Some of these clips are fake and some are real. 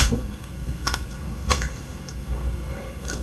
fake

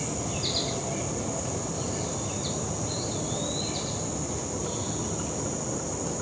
real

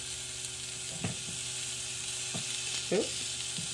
real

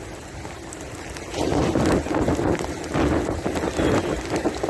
real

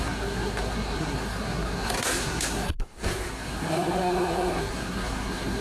fake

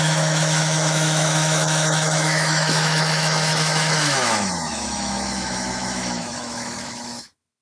fake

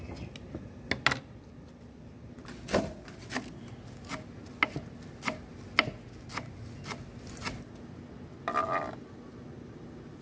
real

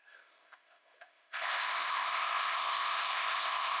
fake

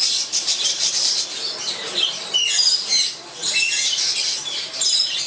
fake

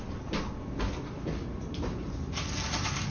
real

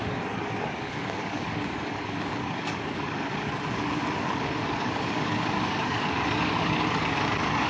fake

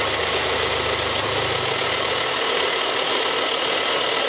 real